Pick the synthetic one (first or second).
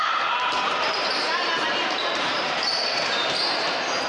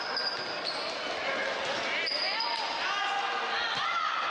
first